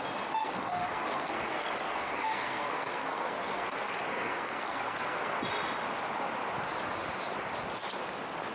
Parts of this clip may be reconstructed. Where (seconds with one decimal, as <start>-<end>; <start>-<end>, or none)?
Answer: 0.4-5.4